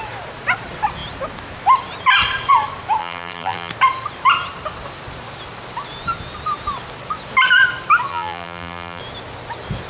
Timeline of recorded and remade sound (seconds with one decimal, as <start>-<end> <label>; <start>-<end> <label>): 0.0-3.0 recorded; 3.0-3.7 remade; 3.7-8.1 recorded; 8.1-9.0 remade; 9.0-9.9 recorded